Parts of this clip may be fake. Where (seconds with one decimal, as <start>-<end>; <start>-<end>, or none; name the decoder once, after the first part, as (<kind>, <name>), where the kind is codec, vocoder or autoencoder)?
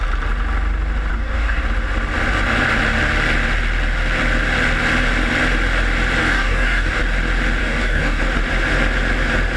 1.1-1.6 (codec, DAC); 6.2-7.0; 7.6-8.2